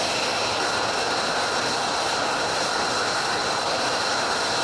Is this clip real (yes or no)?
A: yes